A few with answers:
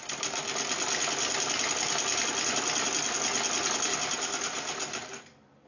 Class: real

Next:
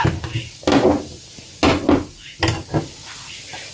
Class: real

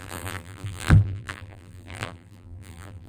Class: fake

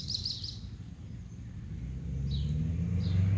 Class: real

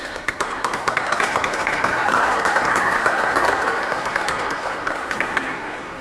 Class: fake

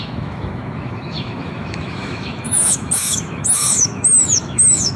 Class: fake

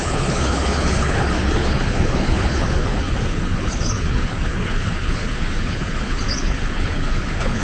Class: fake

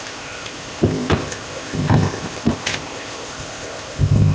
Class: fake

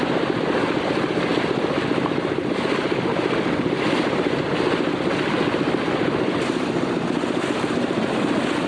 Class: real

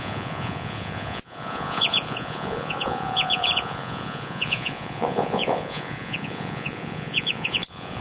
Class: fake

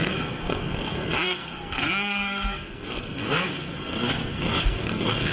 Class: fake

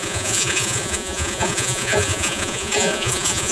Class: fake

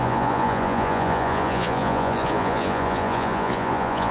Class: fake